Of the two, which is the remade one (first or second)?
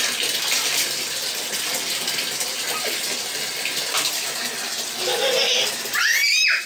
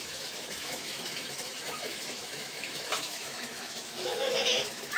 second